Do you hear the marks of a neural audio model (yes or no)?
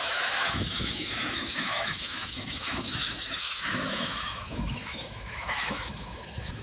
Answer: yes